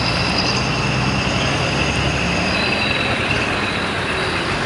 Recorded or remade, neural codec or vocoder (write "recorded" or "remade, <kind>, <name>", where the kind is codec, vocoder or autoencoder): recorded